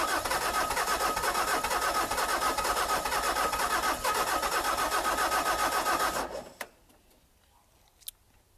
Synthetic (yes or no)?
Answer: no